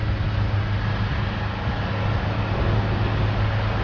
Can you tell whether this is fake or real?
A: real